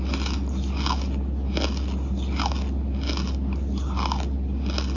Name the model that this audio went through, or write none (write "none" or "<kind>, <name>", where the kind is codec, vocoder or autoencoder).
none